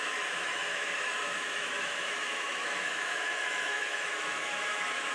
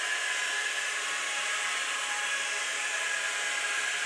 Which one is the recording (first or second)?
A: second